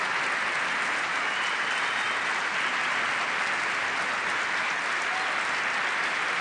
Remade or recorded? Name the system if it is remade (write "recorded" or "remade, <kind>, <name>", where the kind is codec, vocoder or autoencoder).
recorded